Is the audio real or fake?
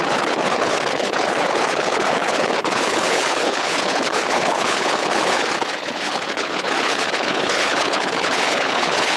fake